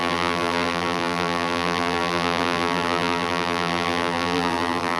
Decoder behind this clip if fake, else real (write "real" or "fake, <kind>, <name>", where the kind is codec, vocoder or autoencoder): fake, vocoder, BigVGAN v2